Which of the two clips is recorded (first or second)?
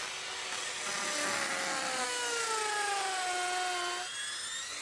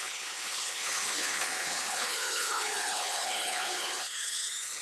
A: first